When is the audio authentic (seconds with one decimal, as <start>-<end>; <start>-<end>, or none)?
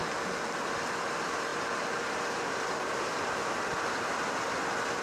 0.0-1.5; 4.5-5.0